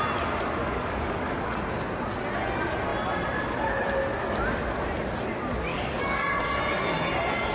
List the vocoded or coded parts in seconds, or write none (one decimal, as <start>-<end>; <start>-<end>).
0.6-1.6; 5.7-6.6

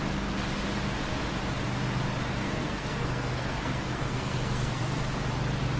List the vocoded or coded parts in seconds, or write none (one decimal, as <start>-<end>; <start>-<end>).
2.4-4.8